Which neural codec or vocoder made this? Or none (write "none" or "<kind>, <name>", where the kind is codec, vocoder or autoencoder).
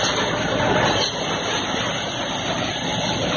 none